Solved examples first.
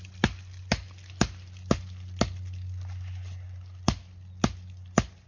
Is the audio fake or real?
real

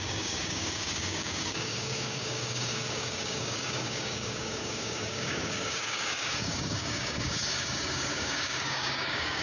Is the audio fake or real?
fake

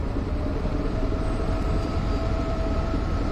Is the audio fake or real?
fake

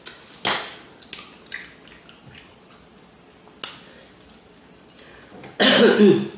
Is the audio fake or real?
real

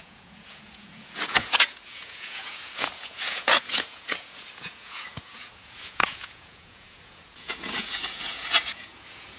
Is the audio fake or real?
fake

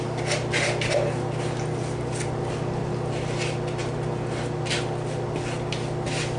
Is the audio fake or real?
real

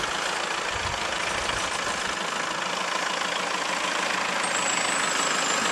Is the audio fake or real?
real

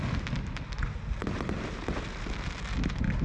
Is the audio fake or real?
real